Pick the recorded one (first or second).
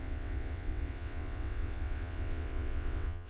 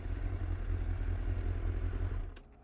second